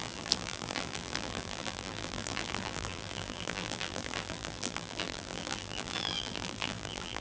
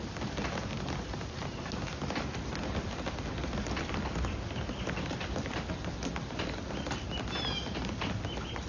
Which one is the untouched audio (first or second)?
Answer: second